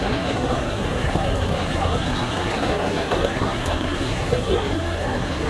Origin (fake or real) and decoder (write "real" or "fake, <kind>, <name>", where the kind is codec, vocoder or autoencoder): fake, codec, SNAC